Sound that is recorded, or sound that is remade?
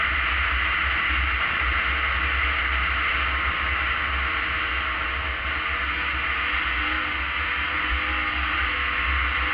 recorded